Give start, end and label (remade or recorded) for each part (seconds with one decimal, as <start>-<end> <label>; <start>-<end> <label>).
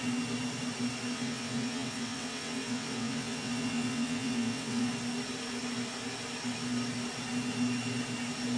0.0-1.1 recorded; 1.1-4.9 remade; 4.9-8.6 recorded